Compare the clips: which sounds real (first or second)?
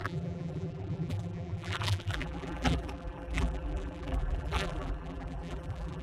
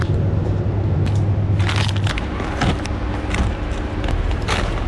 second